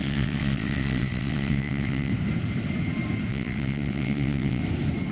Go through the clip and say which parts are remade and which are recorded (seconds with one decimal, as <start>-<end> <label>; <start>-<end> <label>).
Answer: 0.0-2.1 remade; 2.1-3.3 recorded; 3.3-4.6 remade; 4.6-5.1 recorded

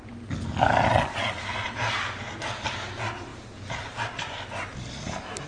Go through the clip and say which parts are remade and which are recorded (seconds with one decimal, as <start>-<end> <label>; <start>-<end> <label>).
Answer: 0.0-0.9 recorded; 0.9-1.4 remade; 1.4-5.5 recorded

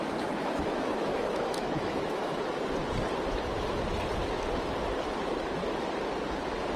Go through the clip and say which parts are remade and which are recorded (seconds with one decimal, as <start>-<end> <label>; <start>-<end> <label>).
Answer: 0.0-0.4 recorded; 0.4-2.4 remade; 2.4-6.8 recorded

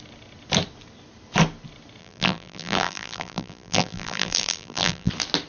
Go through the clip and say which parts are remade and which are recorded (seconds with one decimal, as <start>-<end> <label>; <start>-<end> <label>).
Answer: 0.0-2.0 recorded; 2.0-5.1 remade; 5.1-5.5 recorded

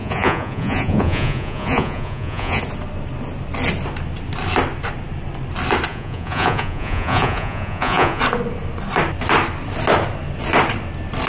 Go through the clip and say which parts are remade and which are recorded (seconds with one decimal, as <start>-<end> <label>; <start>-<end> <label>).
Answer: 0.0-2.6 remade; 2.6-5.9 recorded; 5.9-8.2 remade; 8.2-11.3 recorded